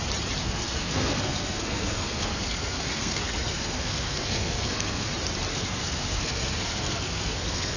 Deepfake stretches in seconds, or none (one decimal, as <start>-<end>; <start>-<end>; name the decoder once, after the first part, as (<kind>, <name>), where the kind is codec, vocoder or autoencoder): 0.4-5.1 (codec, SNAC); 5.5-7.8